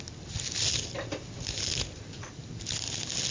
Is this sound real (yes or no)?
yes